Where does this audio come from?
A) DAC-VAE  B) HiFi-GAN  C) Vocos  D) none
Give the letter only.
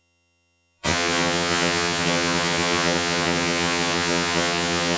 B